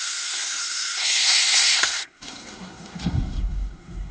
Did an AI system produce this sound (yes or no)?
yes